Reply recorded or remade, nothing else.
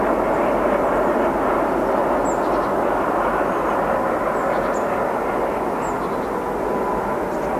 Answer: recorded